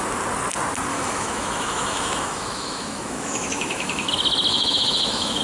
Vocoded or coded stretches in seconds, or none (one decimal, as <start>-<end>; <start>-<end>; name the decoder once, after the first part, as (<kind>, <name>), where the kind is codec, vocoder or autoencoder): 0.9-4.1 (autoencoder, DAC-VAE); 4.5-5.4